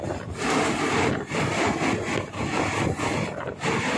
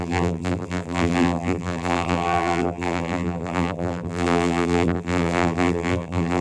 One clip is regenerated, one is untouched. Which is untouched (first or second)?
first